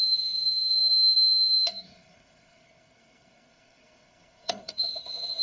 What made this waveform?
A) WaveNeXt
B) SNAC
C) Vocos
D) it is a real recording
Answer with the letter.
B